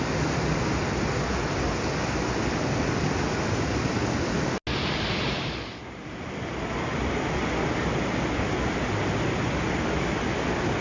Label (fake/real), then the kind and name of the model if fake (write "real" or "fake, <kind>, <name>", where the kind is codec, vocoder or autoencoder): real